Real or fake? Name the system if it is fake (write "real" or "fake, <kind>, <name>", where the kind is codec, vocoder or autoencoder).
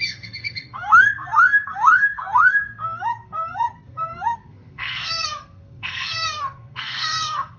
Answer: fake, codec, SNAC